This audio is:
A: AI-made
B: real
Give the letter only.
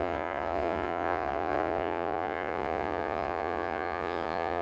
A